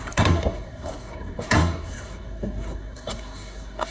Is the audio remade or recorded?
remade